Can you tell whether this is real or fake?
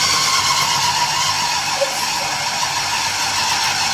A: real